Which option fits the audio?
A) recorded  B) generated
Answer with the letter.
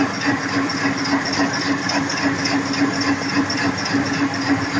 A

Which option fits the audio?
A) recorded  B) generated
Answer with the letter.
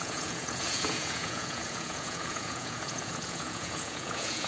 B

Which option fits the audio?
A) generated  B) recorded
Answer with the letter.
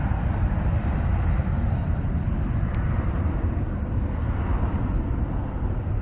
B